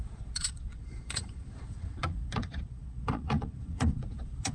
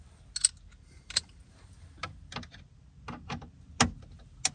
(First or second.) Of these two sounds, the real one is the second